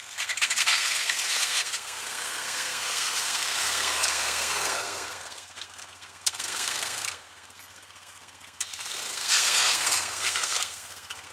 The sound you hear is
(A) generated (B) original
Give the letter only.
A